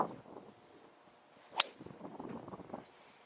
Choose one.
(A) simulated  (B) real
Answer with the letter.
B